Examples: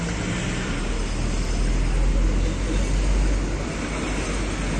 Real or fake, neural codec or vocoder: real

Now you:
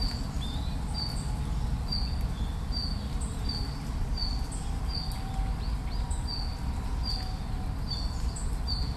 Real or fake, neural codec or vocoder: real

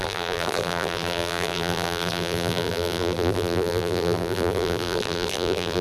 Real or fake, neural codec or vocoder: fake, vocoder, BigVGAN v2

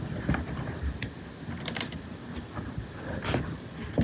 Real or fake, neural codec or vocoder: real